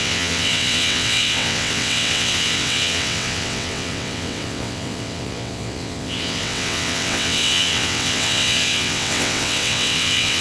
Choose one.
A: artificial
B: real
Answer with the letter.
A